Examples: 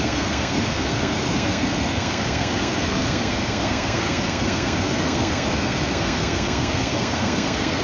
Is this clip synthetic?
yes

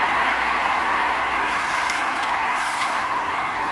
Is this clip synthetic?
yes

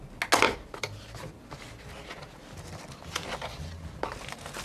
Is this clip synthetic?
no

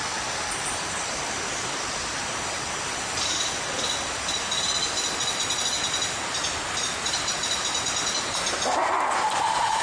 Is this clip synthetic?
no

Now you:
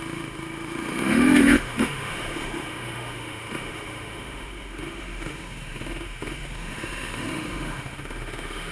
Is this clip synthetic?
yes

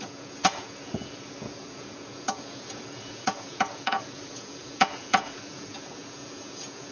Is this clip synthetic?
yes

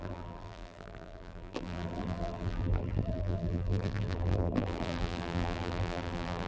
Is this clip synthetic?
yes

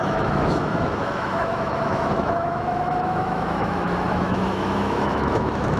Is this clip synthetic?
yes